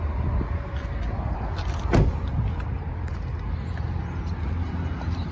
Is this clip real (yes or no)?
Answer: yes